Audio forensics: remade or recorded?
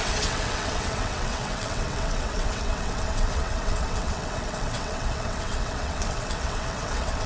remade